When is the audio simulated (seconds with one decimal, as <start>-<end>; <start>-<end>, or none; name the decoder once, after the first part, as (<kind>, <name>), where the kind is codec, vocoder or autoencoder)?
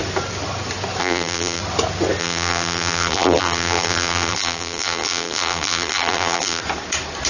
1.0-1.6 (vocoder, BigVGAN v2); 2.2-6.6